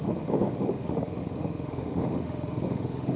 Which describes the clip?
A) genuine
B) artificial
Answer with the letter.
B